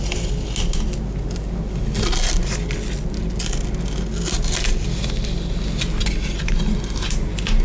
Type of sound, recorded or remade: recorded